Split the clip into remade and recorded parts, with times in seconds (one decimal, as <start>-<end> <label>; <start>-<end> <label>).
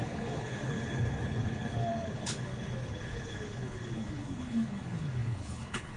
0.0-6.0 remade